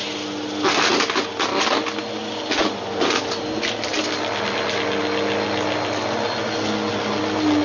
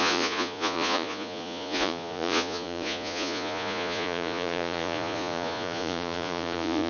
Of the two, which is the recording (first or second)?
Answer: first